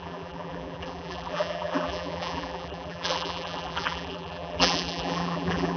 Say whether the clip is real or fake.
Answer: fake